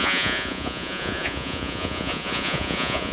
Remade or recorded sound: remade